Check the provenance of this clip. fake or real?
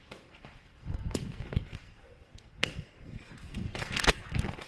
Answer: fake